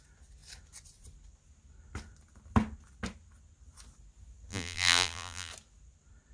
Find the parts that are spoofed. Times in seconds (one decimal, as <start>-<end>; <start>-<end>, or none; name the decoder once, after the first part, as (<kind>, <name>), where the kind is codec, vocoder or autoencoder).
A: 4.5-5.5 (vocoder, BigVGAN v2)